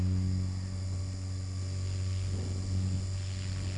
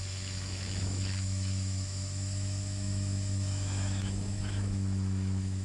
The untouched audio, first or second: first